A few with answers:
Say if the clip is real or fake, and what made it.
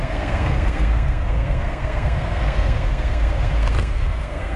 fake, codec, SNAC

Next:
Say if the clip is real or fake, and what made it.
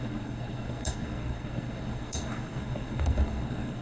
fake, codec, SNAC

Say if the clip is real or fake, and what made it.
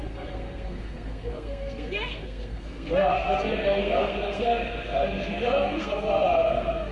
fake, codec, SNAC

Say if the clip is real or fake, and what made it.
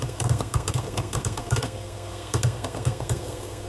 fake, codec, SNAC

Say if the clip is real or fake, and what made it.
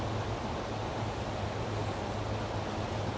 real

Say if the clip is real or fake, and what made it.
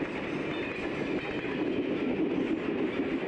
real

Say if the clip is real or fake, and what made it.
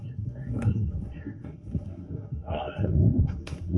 fake, codec, SNAC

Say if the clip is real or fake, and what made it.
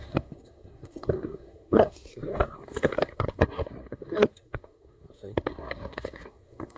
fake, codec, SNAC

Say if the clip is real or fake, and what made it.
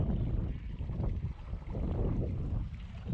real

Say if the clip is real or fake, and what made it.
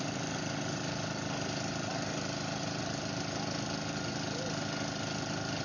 real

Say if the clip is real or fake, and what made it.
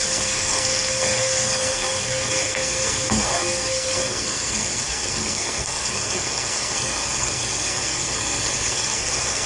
fake, codec, SNAC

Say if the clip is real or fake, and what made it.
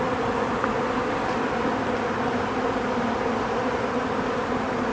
real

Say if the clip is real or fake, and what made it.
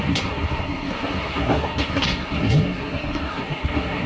fake, codec, SNAC